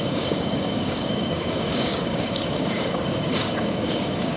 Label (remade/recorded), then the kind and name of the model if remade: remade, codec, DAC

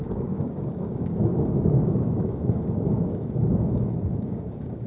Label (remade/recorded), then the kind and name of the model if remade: remade, codec, DAC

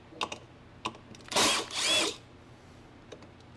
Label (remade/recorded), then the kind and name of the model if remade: recorded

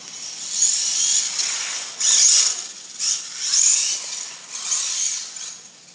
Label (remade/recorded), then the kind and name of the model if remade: recorded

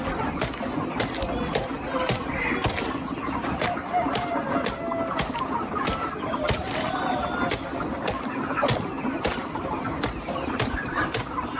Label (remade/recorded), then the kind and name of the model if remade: recorded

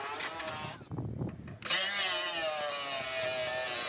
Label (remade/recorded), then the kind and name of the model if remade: recorded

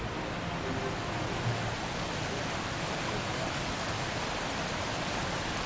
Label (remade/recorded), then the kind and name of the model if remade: recorded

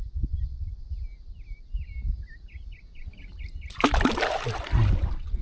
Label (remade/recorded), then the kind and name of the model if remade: recorded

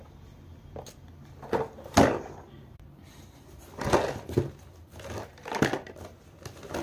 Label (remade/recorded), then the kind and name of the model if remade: recorded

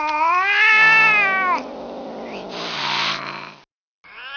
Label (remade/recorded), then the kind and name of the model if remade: recorded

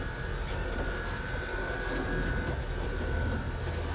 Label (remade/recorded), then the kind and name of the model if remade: recorded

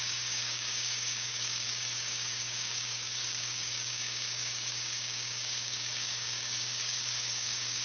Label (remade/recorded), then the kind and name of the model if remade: remade, codec, DAC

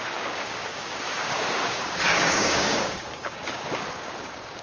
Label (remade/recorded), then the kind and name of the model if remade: remade, codec, DAC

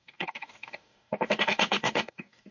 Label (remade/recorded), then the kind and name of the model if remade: remade, codec, DAC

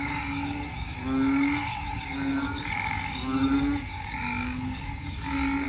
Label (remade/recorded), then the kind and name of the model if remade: remade, codec, DAC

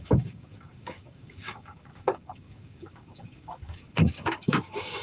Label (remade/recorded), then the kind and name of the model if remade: remade, codec, DAC